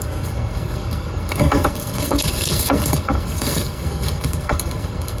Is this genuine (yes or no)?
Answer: no